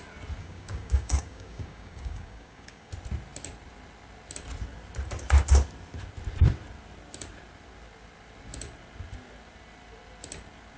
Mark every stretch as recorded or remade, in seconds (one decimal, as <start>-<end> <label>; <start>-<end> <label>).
0.0-0.4 recorded; 0.4-2.9 remade; 2.9-10.8 recorded